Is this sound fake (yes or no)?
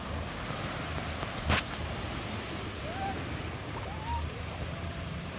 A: no